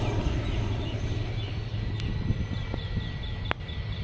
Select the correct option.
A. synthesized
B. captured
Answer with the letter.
B